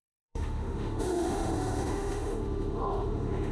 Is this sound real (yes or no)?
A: no